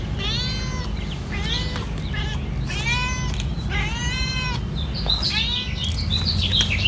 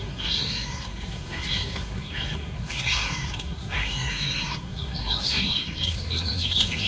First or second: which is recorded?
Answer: first